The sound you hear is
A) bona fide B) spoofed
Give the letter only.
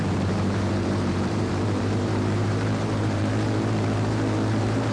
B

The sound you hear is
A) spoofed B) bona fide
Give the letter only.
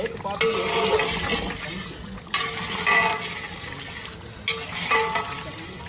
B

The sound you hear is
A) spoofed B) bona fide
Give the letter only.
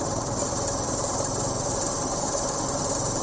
A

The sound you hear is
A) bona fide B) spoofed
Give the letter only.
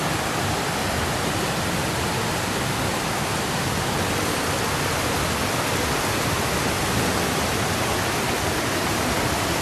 A